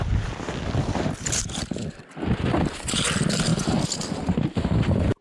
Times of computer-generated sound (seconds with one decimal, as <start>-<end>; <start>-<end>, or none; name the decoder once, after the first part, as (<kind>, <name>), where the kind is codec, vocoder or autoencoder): none